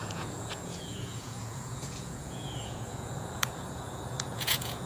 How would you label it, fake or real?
fake